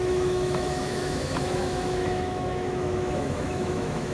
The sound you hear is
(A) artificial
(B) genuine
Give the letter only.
A